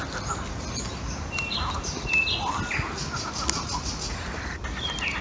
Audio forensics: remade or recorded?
recorded